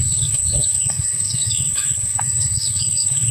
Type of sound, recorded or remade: remade